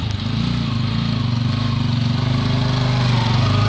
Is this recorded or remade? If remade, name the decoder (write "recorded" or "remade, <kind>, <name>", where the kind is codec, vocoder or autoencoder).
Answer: recorded